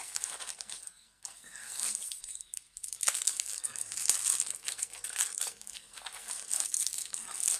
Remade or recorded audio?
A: remade